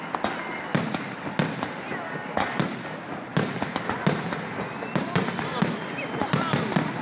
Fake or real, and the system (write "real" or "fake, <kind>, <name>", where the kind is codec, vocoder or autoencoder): real